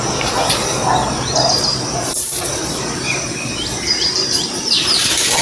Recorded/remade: remade